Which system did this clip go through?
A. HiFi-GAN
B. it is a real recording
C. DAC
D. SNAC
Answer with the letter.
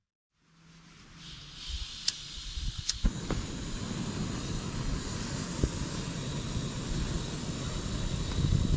B